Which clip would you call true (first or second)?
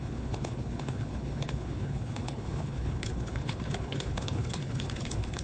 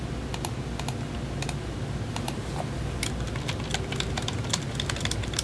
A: second